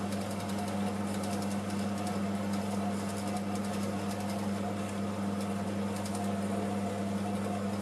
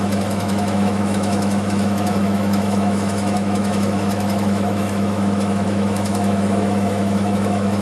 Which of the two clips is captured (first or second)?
first